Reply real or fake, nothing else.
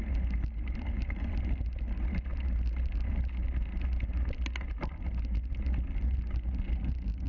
real